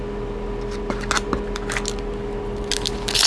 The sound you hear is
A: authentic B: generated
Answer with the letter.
A